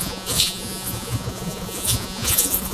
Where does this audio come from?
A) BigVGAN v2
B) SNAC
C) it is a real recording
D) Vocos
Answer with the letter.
D